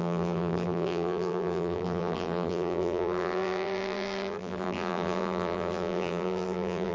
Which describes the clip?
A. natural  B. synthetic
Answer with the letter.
B